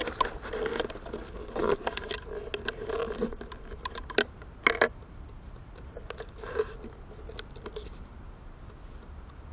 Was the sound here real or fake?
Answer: real